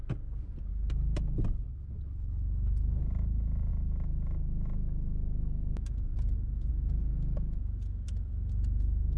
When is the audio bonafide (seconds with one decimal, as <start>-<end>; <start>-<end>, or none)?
0.0-9.2